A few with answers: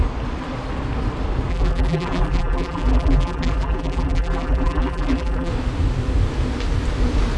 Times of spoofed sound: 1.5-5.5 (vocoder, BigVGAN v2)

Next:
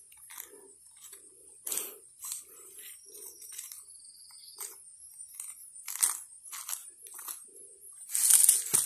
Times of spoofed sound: 1.1-4.3 (vocoder, BigVGAN v2)

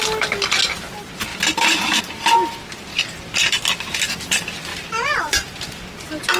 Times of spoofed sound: 1.3-2.0 (vocoder, BigVGAN v2); 4.7-5.9

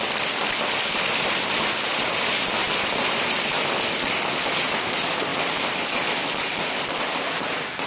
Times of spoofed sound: 0.0-2.6 (vocoder, BigVGAN v2); 4.7-7.9

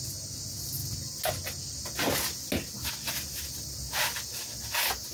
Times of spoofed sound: none